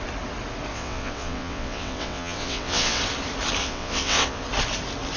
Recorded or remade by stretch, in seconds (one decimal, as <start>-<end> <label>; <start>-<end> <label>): 0.0-0.7 recorded; 0.7-3.0 remade; 3.0-3.6 recorded; 3.6-4.4 remade; 4.4-5.2 recorded